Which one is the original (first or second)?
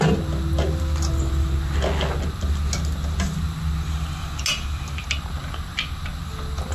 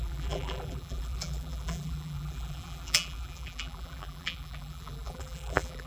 first